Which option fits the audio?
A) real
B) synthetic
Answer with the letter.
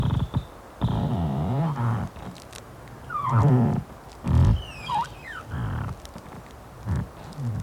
A